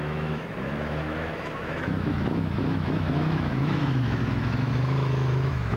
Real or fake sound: fake